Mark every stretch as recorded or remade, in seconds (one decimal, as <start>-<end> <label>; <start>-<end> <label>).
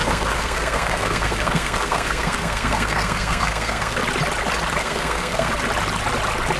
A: 0.0-4.0 remade; 4.0-4.8 recorded; 4.8-5.5 remade; 5.5-6.6 recorded